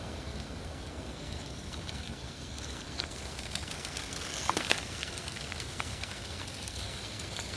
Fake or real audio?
fake